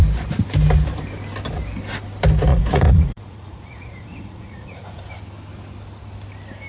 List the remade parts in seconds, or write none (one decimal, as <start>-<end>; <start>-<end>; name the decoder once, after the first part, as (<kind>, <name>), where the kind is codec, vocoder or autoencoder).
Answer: 2.5-5.0 (vocoder, Vocos)